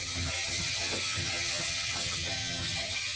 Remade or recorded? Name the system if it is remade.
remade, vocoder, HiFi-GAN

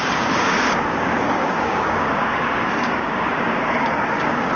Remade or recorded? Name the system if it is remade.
remade, codec, DAC